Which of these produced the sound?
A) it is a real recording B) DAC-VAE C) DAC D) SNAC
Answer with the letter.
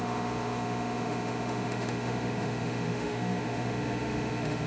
B